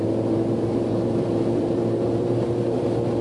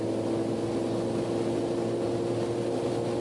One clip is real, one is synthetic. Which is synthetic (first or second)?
first